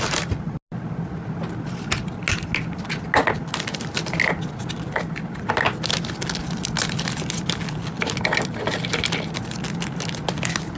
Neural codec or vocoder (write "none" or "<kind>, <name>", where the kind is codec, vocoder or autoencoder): none